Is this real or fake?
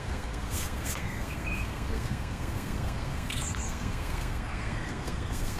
fake